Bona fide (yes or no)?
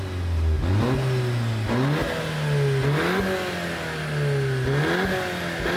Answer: yes